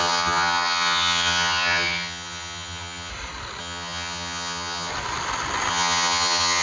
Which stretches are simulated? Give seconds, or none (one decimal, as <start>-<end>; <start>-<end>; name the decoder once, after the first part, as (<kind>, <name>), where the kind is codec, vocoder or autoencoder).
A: 0.0-3.1 (vocoder, HiFi-GAN); 3.6-4.9; 5.7-6.6